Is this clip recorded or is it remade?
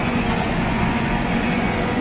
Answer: remade